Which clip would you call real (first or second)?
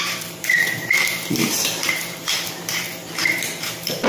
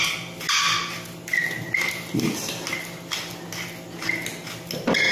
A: second